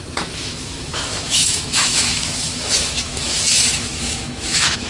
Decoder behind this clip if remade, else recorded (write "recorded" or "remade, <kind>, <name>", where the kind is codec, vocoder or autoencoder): remade, autoencoder, DAC-VAE